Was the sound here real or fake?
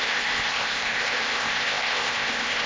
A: fake